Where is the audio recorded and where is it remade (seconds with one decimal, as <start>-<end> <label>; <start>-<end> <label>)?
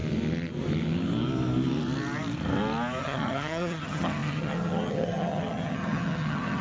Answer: 0.0-3.0 recorded; 3.0-6.6 remade